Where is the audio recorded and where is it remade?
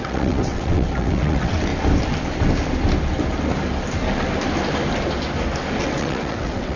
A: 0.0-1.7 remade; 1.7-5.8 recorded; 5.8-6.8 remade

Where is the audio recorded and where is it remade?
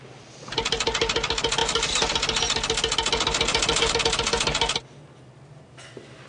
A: 0.0-6.3 recorded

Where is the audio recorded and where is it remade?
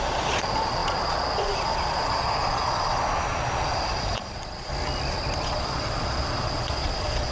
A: 0.0-4.7 remade; 4.7-5.4 recorded; 5.4-7.3 remade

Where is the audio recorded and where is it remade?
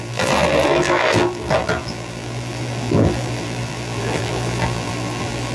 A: 0.0-5.5 remade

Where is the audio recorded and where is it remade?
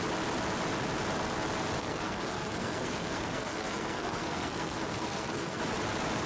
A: 0.0-1.8 recorded; 1.8-5.6 remade; 5.6-6.3 recorded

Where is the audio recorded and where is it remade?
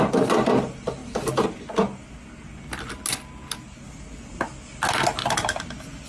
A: 0.0-6.1 recorded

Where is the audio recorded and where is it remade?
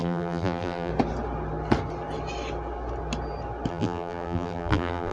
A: 0.0-0.9 remade; 0.9-3.7 recorded; 3.7-5.1 remade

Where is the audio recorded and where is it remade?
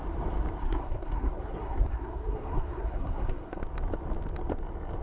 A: 0.0-0.6 recorded; 0.6-3.6 remade; 3.6-5.0 recorded